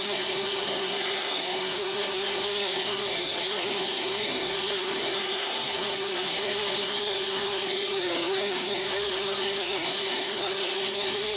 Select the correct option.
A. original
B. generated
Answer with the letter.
B